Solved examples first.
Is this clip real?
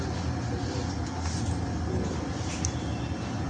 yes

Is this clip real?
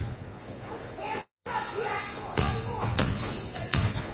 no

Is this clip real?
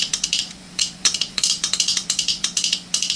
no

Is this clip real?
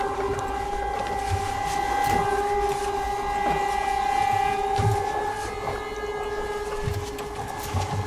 yes